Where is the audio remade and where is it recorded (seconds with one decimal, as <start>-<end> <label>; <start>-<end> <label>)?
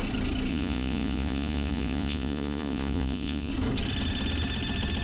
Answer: 0.0-0.5 recorded; 0.5-3.5 remade; 3.5-5.0 recorded